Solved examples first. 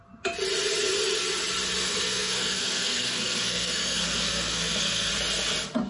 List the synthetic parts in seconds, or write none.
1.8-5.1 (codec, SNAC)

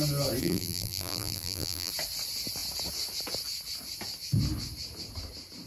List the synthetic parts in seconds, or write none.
0.4-1.9 (vocoder, BigVGAN v2)

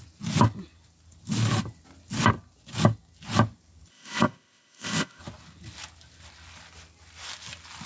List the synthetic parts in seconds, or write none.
3.9-5.2 (codec, ZipCodec)

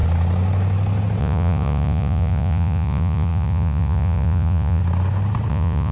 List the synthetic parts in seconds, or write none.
1.2-4.8 (vocoder, Vocos); 5.5-5.9

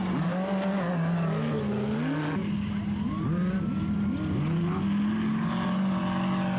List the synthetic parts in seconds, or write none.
none